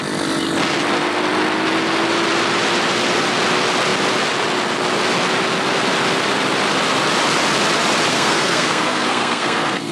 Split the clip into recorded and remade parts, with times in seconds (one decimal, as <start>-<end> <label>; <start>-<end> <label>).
0.0-8.1 recorded; 8.1-9.9 remade